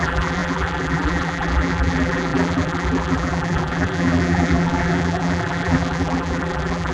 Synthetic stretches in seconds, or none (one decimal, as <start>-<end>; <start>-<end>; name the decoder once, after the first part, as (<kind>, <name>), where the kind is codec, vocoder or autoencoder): 0.0-6.9 (vocoder, BigVGAN v2)